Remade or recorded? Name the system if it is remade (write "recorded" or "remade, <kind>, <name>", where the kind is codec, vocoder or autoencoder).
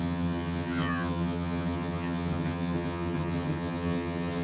remade, vocoder, HiFi-GAN